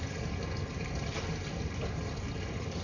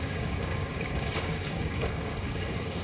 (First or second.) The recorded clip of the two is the first